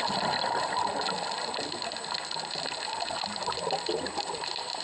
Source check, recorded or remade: remade